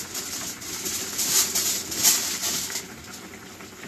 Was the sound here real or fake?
real